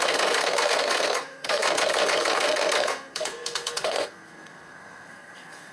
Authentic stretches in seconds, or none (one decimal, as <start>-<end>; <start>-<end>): none